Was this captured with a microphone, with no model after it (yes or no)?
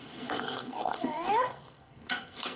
no